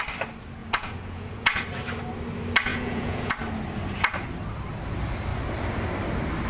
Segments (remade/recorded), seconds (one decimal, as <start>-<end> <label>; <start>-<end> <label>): 0.0-0.6 recorded; 0.6-1.6 remade; 1.6-2.7 recorded; 2.7-3.3 remade; 3.3-6.5 recorded